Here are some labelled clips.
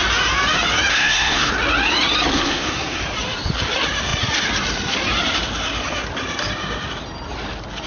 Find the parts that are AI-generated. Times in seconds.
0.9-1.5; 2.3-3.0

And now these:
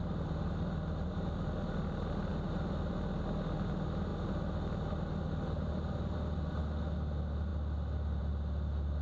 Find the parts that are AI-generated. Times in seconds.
none

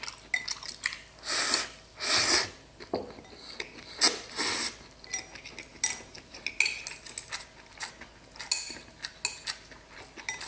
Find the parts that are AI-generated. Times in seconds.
none

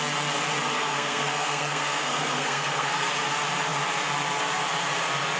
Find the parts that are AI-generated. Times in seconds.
0.8-3.1

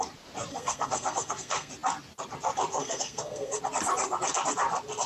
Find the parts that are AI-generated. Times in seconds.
0.5-1.7; 2.7-3.6

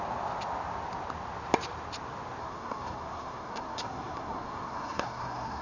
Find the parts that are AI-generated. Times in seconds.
2.4-5.6